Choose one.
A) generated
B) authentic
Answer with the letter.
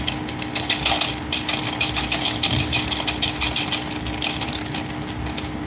A